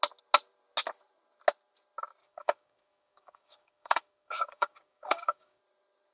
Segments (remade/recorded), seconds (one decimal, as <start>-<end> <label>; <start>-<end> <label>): 0.0-2.2 recorded; 2.2-5.6 remade; 5.6-6.1 recorded